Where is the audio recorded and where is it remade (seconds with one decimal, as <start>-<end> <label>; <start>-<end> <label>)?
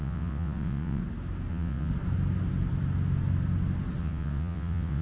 0.0-1.0 remade; 1.0-1.5 recorded; 1.5-1.9 remade; 1.9-4.0 recorded; 4.0-5.0 remade